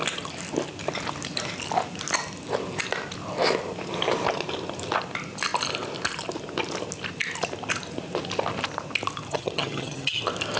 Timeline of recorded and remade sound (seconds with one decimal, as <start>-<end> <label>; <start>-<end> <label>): 0.0-9.3 recorded; 9.3-10.2 remade; 10.2-10.6 recorded